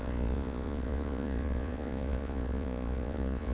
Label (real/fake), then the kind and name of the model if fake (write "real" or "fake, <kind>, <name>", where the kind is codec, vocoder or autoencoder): fake, vocoder, Vocos